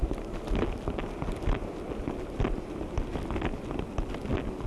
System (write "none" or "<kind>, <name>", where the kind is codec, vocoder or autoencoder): none